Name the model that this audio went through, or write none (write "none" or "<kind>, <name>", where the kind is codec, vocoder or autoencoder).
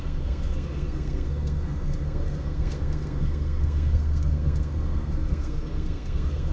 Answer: codec, SNAC